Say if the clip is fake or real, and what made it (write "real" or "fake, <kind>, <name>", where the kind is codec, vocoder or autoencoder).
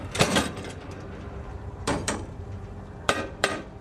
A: fake, vocoder, BigVGAN v2